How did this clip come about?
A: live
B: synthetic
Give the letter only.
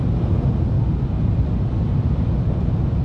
A